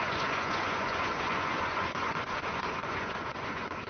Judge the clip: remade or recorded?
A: remade